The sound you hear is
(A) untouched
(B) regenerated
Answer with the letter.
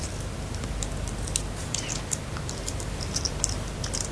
A